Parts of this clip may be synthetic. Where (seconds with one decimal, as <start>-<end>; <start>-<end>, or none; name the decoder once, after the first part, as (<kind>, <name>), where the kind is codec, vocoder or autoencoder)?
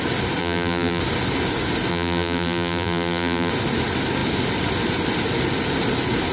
0.4-1.0 (vocoder, BigVGAN v2); 1.9-3.5